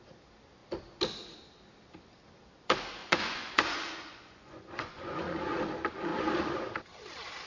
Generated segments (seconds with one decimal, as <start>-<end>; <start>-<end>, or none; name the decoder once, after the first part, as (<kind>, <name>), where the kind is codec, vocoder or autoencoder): 3.0-5.6 (vocoder, Vocos)

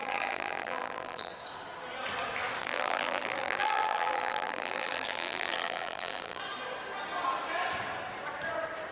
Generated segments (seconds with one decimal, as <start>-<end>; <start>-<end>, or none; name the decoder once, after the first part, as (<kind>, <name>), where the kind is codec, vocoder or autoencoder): 0.0-1.3 (vocoder, BigVGAN v2); 2.6-6.4

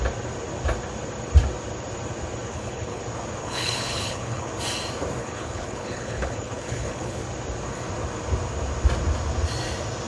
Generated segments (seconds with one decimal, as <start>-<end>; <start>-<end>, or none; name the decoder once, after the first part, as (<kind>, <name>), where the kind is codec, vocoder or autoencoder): 2.5-3.0 (codec, HILCodec); 3.4-4.5; 5.2-7.2

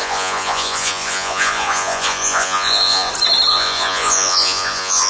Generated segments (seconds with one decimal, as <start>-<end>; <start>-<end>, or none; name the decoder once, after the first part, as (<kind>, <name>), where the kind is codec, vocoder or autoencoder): 0.0-3.1 (vocoder, Vocos); 3.5-5.1

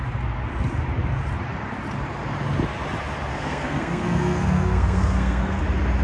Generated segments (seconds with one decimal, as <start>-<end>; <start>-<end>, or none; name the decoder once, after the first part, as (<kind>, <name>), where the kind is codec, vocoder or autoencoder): 3.3-5.6 (codec, SNAC)